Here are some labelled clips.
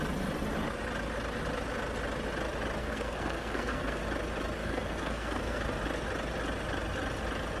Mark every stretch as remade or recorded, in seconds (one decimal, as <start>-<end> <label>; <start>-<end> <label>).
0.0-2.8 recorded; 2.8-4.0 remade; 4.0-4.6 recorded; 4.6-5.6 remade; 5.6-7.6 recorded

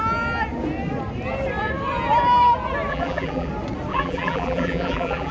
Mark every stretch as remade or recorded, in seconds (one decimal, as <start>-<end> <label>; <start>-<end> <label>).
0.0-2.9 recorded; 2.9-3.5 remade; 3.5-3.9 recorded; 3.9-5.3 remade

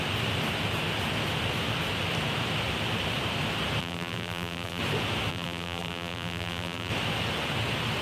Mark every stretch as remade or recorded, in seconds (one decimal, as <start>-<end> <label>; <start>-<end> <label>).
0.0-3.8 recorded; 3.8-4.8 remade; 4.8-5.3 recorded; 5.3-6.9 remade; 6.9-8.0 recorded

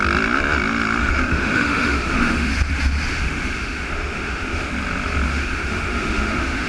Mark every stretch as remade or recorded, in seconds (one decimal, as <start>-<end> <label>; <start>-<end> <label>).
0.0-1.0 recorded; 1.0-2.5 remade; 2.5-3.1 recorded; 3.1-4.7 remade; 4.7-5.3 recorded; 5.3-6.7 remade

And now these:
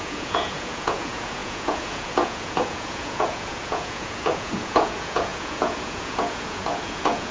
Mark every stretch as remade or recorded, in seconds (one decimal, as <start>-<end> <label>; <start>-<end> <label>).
0.0-7.3 remade

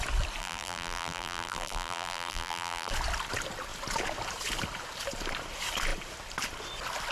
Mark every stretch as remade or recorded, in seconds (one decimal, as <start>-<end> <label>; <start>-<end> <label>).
0.0-0.4 recorded; 0.4-2.9 remade; 2.9-7.1 recorded

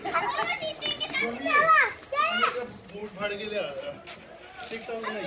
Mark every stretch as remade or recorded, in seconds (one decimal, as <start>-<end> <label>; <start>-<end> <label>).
0.0-5.3 recorded